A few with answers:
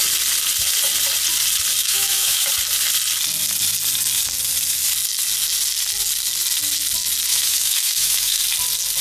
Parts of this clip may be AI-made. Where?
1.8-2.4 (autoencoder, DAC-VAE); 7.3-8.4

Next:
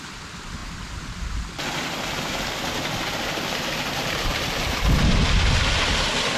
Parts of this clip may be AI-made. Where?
none

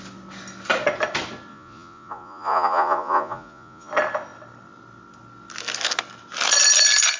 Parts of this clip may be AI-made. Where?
1.5-3.9 (vocoder, Vocos)

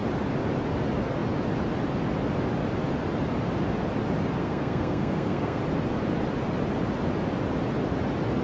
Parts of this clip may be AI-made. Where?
4.4-5.6 (codec, SNAC)

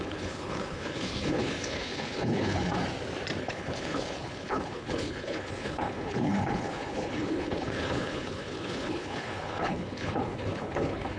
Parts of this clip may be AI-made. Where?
0.0-2.8 (codec, HILCodec); 3.4-11.2

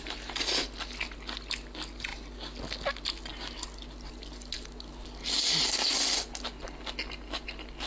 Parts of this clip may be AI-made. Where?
none

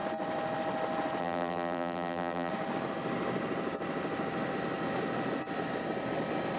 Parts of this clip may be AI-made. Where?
1.2-2.5 (vocoder, BigVGAN v2)

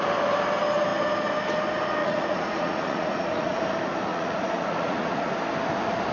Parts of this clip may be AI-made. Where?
2.0-3.6 (vocoder, Vocos); 4.1-5.3